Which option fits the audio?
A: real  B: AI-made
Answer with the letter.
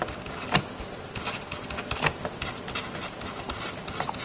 A